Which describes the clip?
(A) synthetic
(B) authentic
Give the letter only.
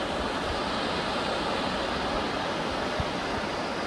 B